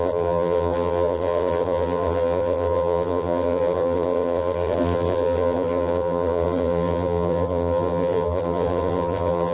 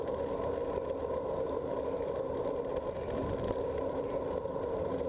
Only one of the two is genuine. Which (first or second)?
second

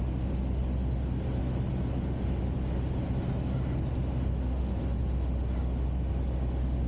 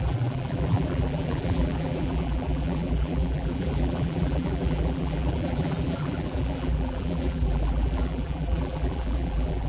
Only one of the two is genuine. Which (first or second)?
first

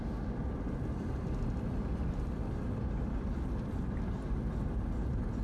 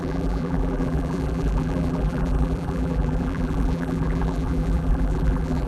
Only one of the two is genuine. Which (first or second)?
first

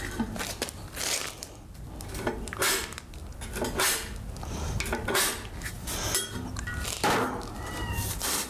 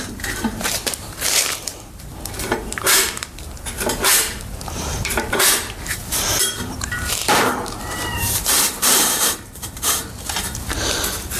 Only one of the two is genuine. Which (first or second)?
first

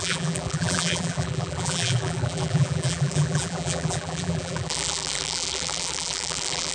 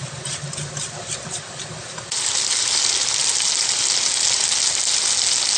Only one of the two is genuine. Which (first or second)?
second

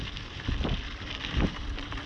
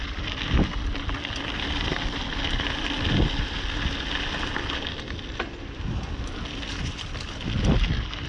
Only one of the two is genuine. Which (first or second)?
second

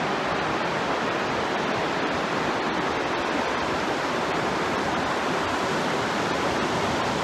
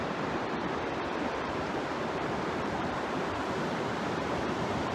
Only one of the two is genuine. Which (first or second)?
first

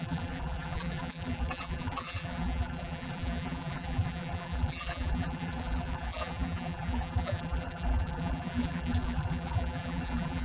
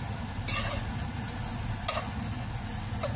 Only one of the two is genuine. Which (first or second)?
second